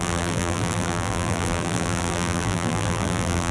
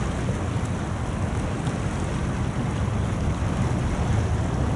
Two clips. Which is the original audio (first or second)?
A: second